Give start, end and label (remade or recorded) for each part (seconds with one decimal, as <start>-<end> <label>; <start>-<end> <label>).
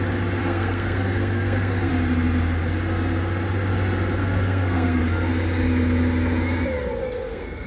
0.0-0.4 recorded; 0.4-1.9 remade; 1.9-4.2 recorded; 4.2-5.0 remade; 5.0-7.0 recorded; 7.0-7.7 remade